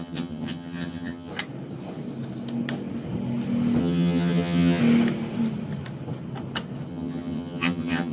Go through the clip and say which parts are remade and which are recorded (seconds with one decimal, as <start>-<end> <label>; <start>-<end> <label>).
0.0-1.3 remade; 1.3-3.8 recorded; 3.8-4.8 remade; 4.8-6.9 recorded; 6.9-8.1 remade